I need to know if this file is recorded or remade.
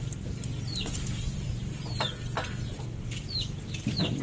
recorded